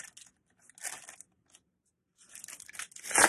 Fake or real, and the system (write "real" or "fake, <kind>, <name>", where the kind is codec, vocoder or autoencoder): real